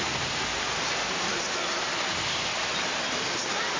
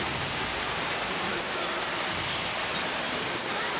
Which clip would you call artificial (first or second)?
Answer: second